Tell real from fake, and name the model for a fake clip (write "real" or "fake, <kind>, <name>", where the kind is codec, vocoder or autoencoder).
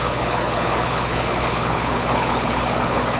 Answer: fake, codec, HILCodec